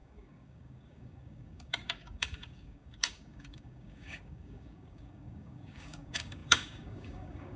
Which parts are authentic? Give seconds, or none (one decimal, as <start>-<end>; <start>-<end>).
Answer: none